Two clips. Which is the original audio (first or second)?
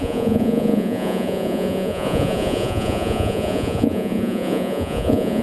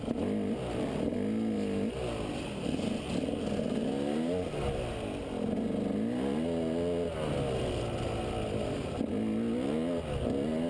second